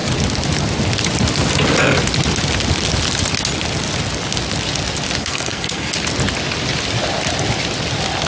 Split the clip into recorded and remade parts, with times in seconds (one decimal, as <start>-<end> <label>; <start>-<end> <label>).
0.0-5.2 recorded; 5.2-5.9 remade; 5.9-8.3 recorded